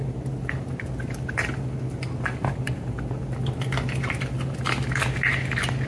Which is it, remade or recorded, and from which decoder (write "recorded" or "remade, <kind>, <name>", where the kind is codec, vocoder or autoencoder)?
recorded